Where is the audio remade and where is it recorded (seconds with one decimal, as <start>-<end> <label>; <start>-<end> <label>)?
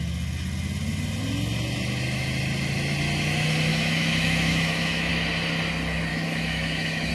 0.0-3.7 recorded; 3.7-5.1 remade; 5.1-6.1 recorded; 6.1-7.1 remade